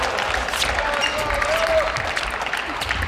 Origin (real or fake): real